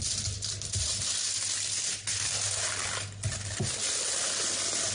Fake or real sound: real